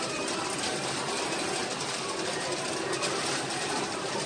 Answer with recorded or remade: recorded